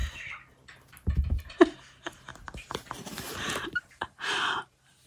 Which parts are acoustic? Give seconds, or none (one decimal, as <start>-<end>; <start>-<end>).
0.0-1.4